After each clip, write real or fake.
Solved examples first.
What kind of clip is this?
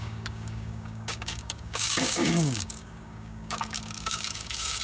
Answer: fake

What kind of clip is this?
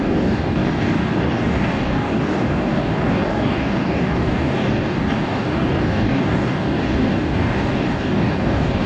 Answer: fake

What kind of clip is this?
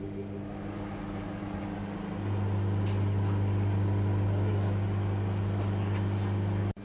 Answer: real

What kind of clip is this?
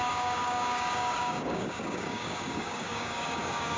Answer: fake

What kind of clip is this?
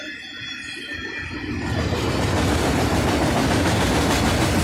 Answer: real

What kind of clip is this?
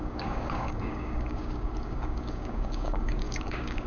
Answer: fake